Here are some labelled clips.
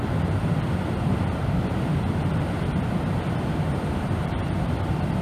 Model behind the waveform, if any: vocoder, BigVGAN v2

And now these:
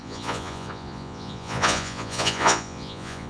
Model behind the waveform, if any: vocoder, Vocos